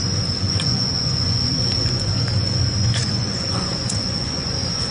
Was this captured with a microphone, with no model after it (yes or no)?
no